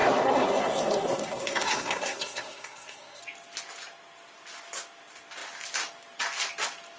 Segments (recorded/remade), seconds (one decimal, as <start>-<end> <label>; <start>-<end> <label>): 0.0-3.2 remade; 3.2-7.0 recorded